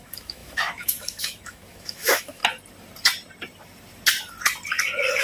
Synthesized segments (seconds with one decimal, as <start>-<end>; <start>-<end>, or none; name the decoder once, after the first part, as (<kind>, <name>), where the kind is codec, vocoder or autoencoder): 0.0-2.4 (autoencoder, DAC-VAE)